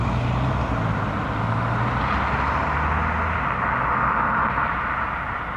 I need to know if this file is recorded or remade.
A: recorded